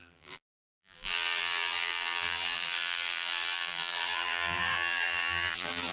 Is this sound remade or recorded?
remade